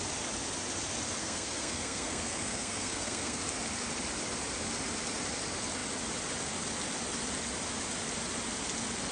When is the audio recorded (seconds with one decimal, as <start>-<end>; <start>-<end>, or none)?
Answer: 0.0-1.2; 3.4-9.1